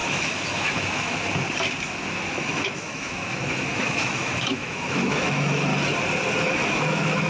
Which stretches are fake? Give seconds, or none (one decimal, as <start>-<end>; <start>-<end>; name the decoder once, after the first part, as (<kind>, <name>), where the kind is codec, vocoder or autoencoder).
0.0-1.2 (autoencoder, DAC-VAE); 2.1-5.7; 6.4-7.3